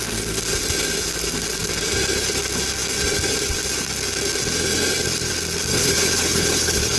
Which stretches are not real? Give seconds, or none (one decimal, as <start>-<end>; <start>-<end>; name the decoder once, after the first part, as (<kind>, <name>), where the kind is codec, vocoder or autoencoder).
5.7-7.0 (codec, HILCodec)